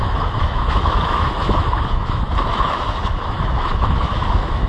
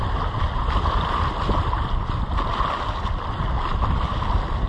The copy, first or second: first